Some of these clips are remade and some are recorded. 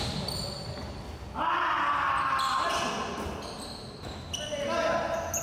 recorded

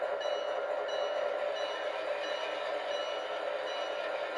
recorded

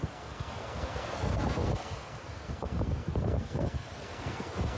remade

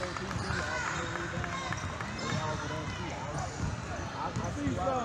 recorded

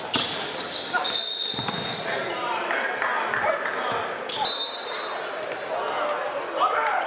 recorded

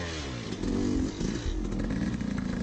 recorded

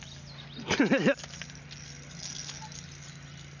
recorded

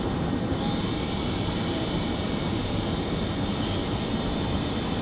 remade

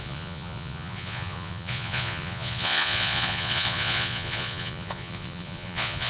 remade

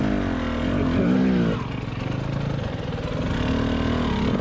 recorded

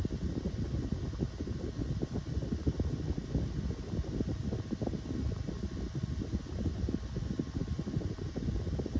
recorded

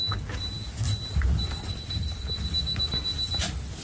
recorded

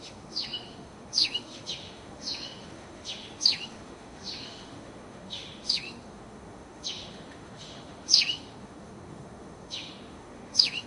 remade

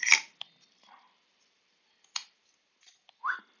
recorded